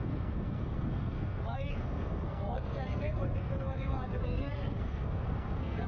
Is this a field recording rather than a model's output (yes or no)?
no